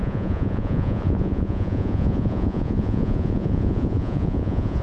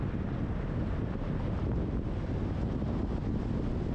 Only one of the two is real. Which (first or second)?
second